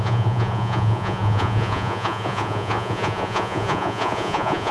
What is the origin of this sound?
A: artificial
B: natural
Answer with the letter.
A